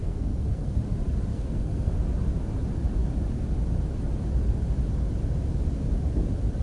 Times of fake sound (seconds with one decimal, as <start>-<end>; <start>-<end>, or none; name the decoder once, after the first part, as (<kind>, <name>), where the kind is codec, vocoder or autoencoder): 0.0-0.8 (codec, SNAC); 1.3-1.9